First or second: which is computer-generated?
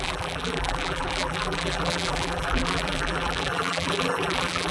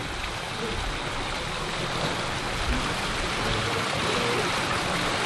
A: first